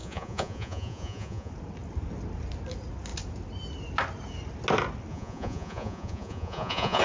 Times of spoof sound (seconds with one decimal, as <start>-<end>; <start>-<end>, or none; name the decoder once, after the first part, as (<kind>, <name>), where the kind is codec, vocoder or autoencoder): 0.0-1.5 (vocoder, Vocos); 5.1-7.0